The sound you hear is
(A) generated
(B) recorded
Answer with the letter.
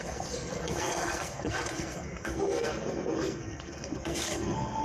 A